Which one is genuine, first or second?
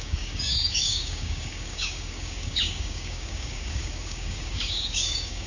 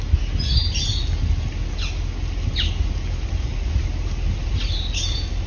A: second